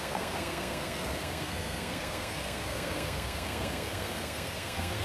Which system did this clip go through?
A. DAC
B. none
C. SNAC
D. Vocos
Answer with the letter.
C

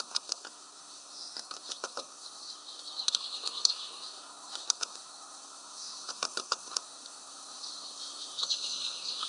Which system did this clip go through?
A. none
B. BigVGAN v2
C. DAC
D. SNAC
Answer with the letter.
D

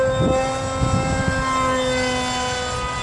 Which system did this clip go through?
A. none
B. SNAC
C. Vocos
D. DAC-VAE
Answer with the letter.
A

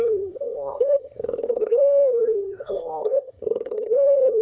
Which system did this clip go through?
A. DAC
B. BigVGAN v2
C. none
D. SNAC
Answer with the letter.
D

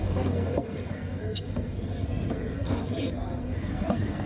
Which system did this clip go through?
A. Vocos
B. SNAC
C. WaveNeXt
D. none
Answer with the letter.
B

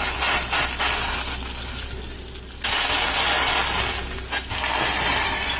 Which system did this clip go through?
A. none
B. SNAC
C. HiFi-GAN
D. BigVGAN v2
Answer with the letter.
A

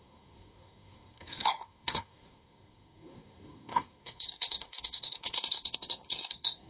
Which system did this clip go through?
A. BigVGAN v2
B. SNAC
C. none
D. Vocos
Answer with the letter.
B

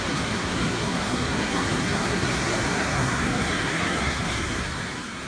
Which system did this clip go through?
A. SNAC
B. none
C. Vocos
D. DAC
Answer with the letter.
A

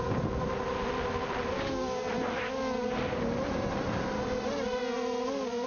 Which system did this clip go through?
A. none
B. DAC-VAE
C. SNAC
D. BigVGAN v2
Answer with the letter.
A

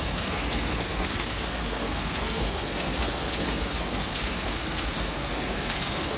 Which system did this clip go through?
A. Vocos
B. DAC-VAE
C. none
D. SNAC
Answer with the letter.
D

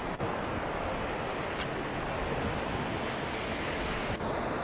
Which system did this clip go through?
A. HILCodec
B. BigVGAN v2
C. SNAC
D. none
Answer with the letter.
D